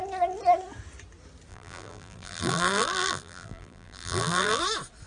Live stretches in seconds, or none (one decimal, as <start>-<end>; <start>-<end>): 0.0-1.5; 4.6-5.1